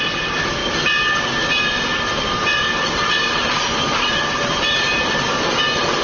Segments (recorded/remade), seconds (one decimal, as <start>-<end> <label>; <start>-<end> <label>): 0.0-6.0 recorded